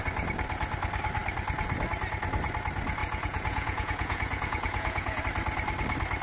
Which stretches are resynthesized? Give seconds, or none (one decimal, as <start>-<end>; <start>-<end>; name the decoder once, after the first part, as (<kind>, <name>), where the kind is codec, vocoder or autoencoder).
3.0-5.2 (vocoder, Vocos)